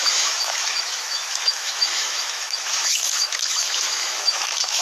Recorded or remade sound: remade